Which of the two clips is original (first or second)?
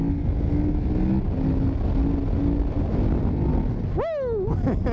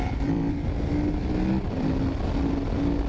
first